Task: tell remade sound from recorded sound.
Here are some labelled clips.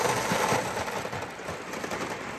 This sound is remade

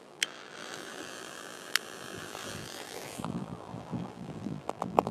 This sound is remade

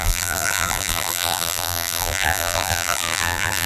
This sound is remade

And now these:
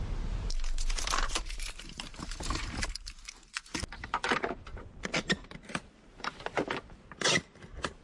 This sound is remade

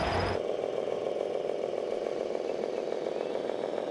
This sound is remade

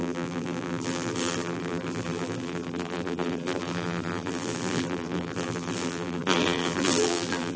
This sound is remade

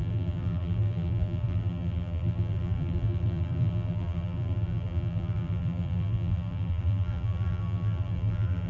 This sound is remade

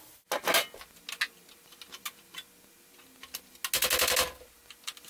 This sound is recorded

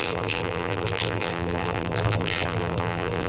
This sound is remade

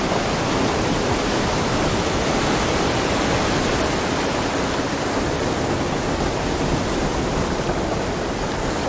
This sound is recorded